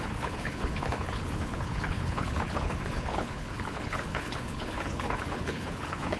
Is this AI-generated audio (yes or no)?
yes